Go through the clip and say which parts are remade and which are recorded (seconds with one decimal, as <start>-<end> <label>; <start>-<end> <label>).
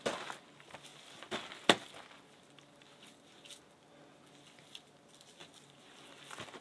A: 0.0-6.6 recorded